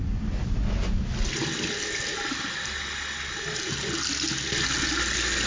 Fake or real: real